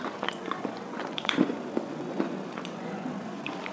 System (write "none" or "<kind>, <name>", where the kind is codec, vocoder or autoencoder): vocoder, Vocos